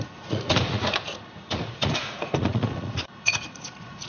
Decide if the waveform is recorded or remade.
remade